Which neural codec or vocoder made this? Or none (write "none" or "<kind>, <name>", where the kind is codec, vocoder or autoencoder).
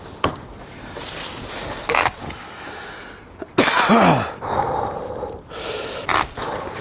none